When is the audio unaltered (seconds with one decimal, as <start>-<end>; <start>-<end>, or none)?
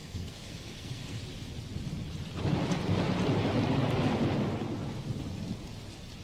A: 1.2-6.2